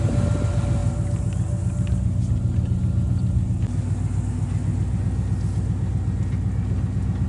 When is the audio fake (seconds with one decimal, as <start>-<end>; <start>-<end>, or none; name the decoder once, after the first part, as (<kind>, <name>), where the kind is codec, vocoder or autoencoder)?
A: none